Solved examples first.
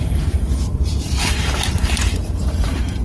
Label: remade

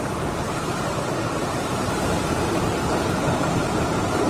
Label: remade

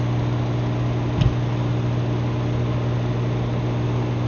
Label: recorded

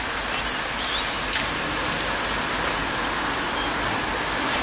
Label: recorded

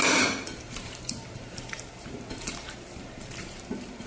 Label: remade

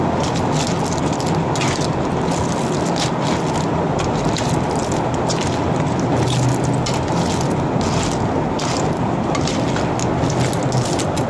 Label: recorded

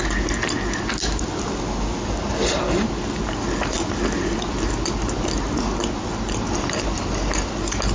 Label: recorded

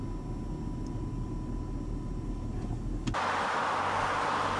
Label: recorded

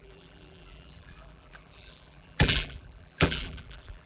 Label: remade